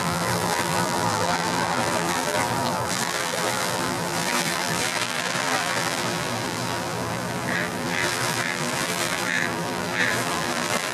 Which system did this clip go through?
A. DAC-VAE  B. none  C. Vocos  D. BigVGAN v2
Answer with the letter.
D